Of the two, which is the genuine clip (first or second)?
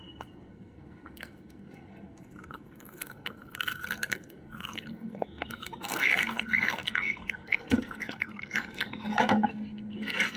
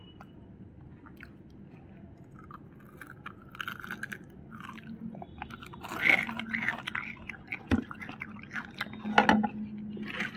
second